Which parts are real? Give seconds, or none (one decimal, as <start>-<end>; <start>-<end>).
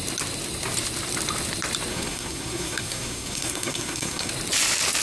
0.0-1.9; 4.3-5.0